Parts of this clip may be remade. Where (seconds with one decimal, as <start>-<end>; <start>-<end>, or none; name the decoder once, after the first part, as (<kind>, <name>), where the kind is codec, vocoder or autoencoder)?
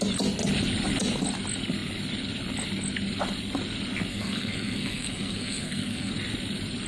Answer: 4.1-6.1 (codec, SNAC)